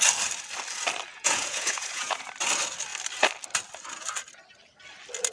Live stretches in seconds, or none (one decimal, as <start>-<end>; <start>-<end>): 0.0-1.1; 2.3-5.3

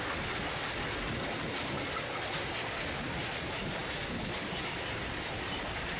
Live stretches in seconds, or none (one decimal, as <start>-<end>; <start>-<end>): 0.0-6.0